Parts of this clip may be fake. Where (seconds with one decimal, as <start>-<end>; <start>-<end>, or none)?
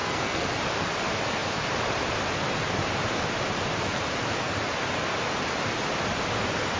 0.0-0.5